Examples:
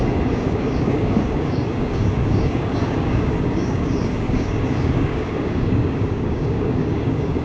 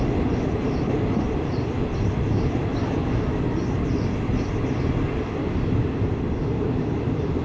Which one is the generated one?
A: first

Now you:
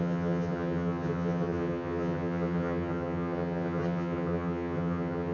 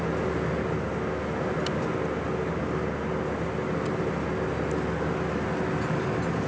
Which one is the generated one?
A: first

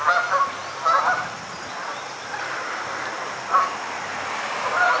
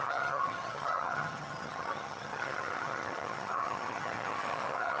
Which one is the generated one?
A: second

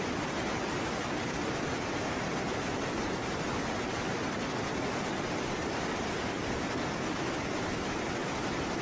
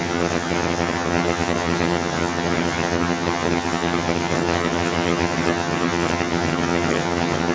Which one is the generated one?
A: second